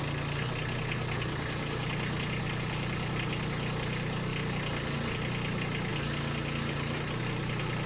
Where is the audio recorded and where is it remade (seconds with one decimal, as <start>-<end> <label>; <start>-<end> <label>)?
0.0-7.9 recorded